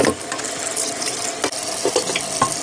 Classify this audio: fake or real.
real